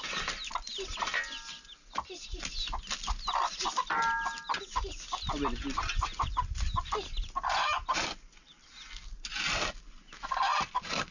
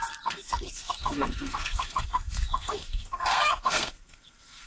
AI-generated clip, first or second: second